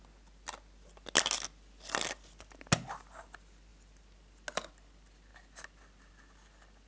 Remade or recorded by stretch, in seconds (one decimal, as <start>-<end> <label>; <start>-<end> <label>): 0.0-6.9 recorded